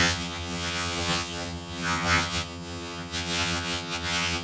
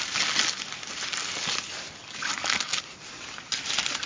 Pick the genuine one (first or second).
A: second